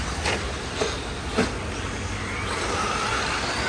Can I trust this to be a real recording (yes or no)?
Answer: yes